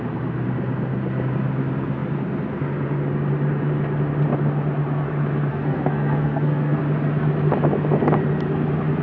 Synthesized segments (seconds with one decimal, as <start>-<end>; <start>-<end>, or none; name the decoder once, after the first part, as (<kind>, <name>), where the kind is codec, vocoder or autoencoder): 5.5-6.8 (codec, SNAC)